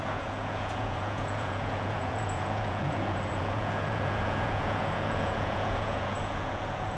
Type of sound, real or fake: fake